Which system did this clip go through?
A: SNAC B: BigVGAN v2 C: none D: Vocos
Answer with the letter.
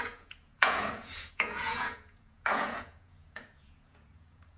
D